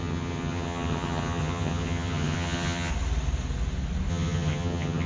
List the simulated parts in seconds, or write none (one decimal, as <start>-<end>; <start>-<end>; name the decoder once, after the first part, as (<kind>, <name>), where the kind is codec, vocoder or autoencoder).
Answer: 0.0-2.9 (vocoder, HiFi-GAN); 4.1-5.1